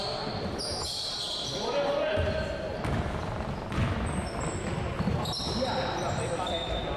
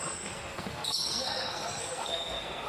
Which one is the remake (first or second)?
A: second